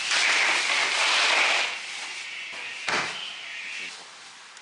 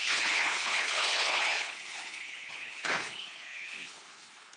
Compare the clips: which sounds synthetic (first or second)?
second